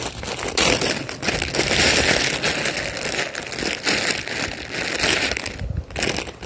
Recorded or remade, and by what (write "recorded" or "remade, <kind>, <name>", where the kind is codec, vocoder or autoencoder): recorded